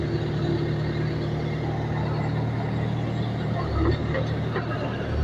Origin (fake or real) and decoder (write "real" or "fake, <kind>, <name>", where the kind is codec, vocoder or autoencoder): real